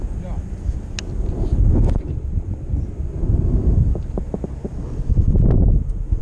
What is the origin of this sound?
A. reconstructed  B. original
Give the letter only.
B